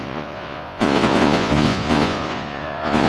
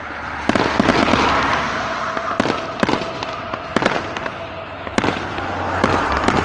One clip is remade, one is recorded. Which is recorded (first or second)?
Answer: second